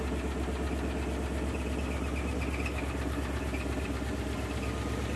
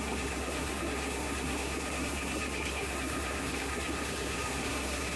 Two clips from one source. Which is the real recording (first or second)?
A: first